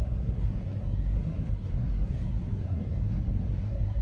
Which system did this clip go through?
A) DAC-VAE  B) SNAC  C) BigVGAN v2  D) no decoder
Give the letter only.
B